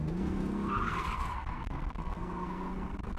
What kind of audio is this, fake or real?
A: fake